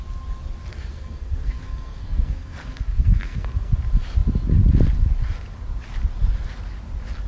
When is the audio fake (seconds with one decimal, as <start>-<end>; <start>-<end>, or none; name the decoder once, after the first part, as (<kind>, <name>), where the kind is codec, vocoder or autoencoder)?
0.7-3.7 (codec, SNAC)